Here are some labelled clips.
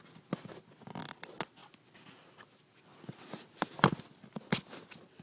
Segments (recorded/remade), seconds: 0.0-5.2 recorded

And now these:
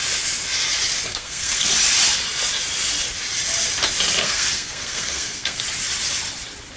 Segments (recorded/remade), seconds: 0.0-1.1 recorded; 1.1-1.7 remade; 1.7-4.2 recorded; 4.2-5.6 remade; 5.6-6.8 recorded

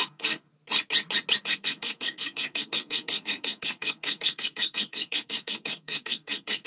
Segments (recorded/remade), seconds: 0.0-0.5 remade; 0.5-1.4 recorded; 1.4-6.7 remade

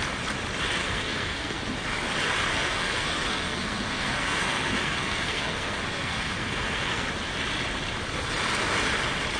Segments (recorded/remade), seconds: 0.0-0.8 recorded; 0.8-1.6 remade; 1.6-2.5 recorded; 2.5-7.1 remade; 7.1-9.4 recorded

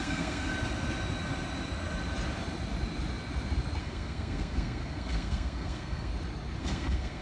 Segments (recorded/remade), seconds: 0.0-0.5 remade; 0.5-3.8 recorded; 3.8-6.1 remade; 6.1-6.6 recorded; 6.6-7.2 remade

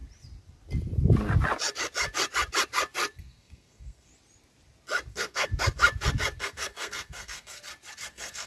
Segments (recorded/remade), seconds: 0.0-3.2 recorded; 3.2-4.1 remade; 4.1-5.1 recorded; 5.1-5.5 remade; 5.5-6.4 recorded; 6.4-7.6 remade; 7.6-8.1 recorded; 8.1-8.5 remade

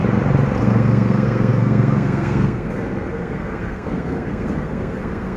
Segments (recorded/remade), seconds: 0.0-0.6 recorded; 0.6-5.4 remade

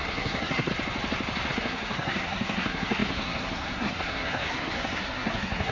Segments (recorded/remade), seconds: 0.0-0.7 remade; 0.7-1.5 recorded; 1.5-5.7 remade